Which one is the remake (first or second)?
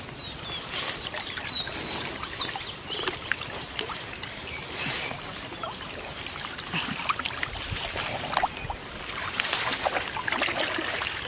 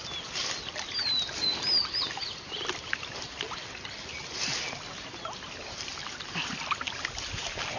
first